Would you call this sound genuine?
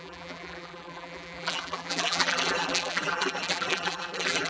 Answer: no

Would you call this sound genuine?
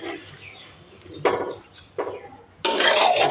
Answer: no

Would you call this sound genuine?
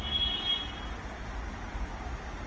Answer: yes